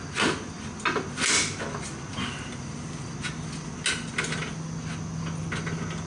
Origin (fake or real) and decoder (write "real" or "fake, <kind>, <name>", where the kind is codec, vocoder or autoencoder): real